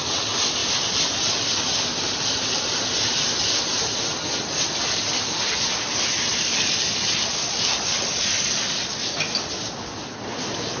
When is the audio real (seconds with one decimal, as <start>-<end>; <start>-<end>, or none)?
0.0-0.6; 2.6-10.8